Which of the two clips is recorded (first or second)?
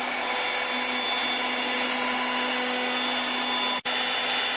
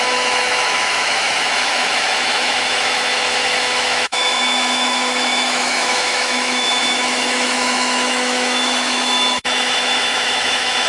first